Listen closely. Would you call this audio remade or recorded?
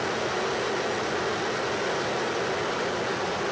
recorded